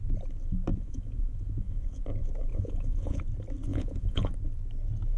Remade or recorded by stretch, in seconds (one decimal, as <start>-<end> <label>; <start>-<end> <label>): 0.0-0.7 recorded; 0.7-2.0 remade; 2.0-2.5 recorded; 2.5-3.2 remade; 3.2-3.7 recorded; 3.7-4.3 remade; 4.3-5.2 recorded